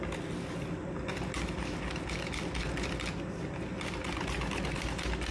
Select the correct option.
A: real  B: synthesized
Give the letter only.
A